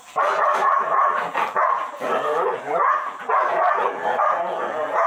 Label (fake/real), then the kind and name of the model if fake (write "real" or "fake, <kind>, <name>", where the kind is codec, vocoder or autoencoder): fake, vocoder, BigVGAN v2